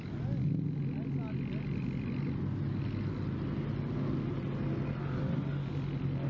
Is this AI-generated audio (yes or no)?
no